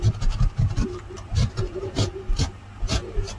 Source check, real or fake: fake